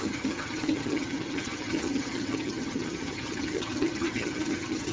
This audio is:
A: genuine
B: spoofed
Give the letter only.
B